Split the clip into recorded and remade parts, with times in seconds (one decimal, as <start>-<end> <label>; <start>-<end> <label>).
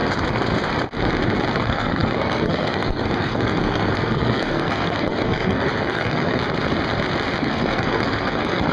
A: 0.0-1.5 recorded; 1.5-6.4 remade; 6.4-7.4 recorded; 7.4-8.7 remade